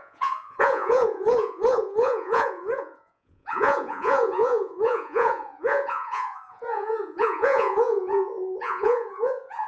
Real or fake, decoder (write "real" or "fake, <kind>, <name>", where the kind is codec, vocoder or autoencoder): fake, vocoder, Vocos